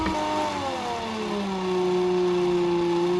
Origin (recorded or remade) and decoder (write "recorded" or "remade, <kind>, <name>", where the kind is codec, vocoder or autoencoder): recorded